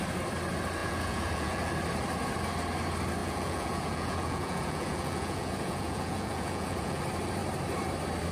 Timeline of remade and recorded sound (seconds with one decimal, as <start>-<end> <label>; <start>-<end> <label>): 0.0-0.8 recorded; 0.8-1.7 remade; 1.7-3.2 recorded; 3.2-7.0 remade; 7.0-8.3 recorded